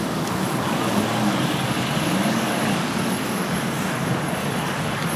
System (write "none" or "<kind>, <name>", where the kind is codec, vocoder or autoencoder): codec, DAC